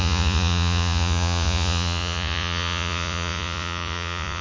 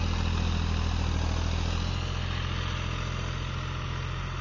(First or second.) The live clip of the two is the second